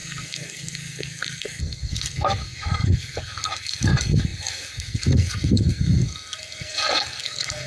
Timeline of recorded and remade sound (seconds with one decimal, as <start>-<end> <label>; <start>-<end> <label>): 0.0-7.7 remade